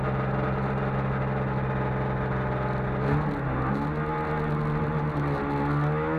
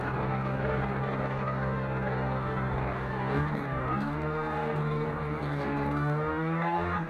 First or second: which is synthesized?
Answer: second